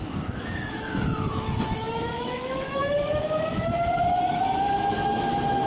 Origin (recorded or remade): remade